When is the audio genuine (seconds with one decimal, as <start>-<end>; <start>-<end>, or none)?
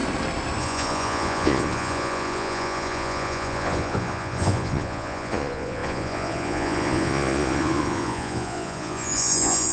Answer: 0.0-0.6